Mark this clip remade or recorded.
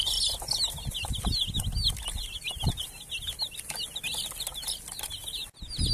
recorded